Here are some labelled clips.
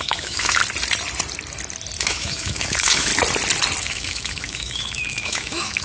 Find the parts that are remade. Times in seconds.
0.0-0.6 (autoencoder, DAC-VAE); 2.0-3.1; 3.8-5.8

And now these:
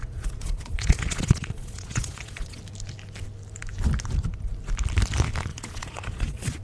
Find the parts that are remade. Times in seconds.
0.0-2.6 (vocoder, Vocos); 5.5-6.6